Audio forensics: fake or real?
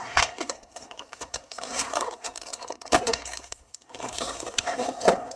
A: fake